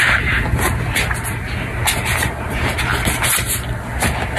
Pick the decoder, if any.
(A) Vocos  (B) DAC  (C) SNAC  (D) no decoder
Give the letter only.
D